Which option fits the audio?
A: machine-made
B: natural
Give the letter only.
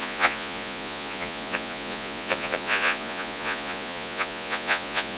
A